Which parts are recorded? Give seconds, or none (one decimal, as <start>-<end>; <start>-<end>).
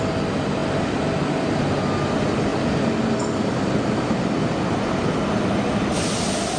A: 0.0-6.6